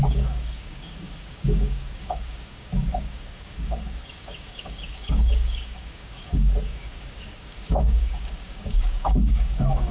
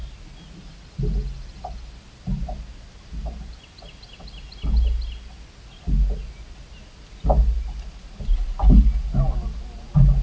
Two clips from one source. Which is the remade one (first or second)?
first